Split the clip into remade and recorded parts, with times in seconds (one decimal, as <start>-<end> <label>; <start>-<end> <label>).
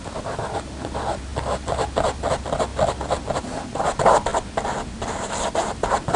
0.0-1.3 remade; 1.3-2.3 recorded; 2.3-2.7 remade; 2.7-3.4 recorded; 3.4-6.2 remade